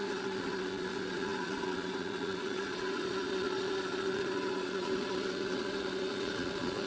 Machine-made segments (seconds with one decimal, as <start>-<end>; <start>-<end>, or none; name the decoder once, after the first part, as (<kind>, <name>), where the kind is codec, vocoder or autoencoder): 0.0-6.9 (vocoder, Vocos)